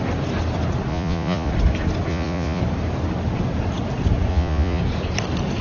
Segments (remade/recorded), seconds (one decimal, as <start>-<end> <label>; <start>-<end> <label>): 0.0-0.9 recorded; 0.9-1.5 remade; 1.5-2.1 recorded; 2.1-2.6 remade; 2.6-4.3 recorded; 4.3-4.8 remade; 4.8-5.6 recorded